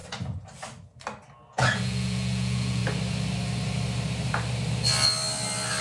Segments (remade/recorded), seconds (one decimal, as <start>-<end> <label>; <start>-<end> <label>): 0.0-1.5 recorded; 1.5-2.8 remade; 2.8-5.8 recorded